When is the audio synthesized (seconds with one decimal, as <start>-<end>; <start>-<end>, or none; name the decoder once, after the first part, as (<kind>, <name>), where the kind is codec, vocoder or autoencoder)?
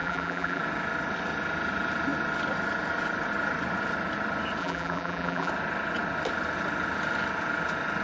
0.0-0.6 (vocoder, BigVGAN v2); 4.6-5.5